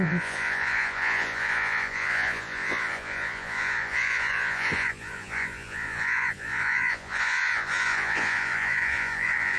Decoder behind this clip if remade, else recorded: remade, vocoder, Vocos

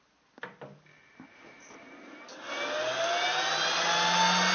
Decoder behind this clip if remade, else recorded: recorded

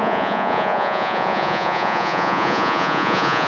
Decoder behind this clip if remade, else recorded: remade, vocoder, Vocos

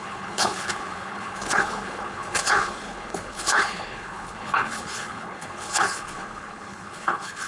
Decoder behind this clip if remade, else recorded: remade, codec, HILCodec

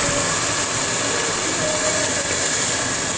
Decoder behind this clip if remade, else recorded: recorded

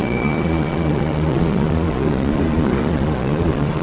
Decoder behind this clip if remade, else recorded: remade, vocoder, Vocos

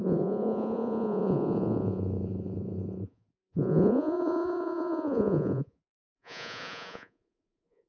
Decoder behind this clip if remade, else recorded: remade, vocoder, Vocos